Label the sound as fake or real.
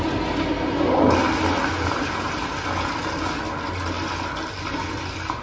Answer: real